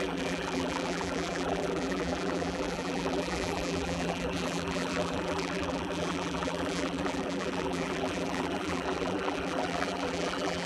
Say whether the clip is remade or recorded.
remade